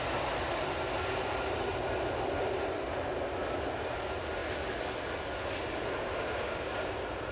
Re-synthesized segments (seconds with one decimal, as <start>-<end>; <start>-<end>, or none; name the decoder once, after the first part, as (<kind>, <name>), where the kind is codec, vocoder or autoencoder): none